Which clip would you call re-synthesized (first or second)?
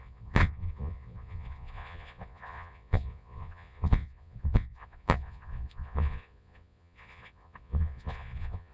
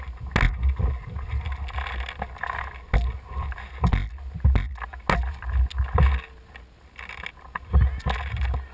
first